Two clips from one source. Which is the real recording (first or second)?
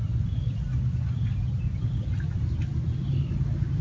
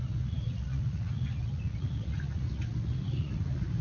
first